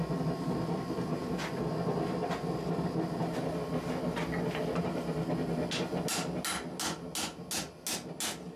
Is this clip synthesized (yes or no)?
no